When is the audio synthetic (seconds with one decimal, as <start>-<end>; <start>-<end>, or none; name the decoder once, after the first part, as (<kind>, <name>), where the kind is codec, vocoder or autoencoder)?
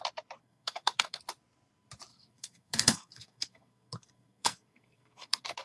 0.4-1.2 (codec, SNAC); 2.1-5.6